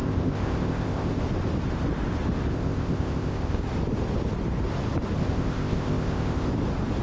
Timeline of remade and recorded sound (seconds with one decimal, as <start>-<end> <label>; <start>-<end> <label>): 0.0-1.2 remade; 1.2-2.5 recorded; 2.5-3.6 remade; 3.6-5.2 recorded; 5.2-6.5 remade; 6.5-7.0 recorded